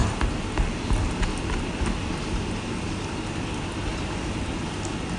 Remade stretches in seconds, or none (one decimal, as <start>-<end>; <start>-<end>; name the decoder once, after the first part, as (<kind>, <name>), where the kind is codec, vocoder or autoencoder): none